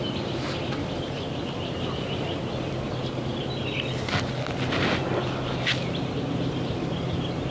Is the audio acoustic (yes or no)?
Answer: yes